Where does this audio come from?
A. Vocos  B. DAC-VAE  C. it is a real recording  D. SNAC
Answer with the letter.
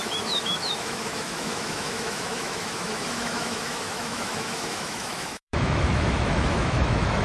B